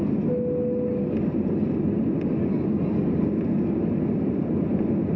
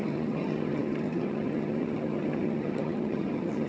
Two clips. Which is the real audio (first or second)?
first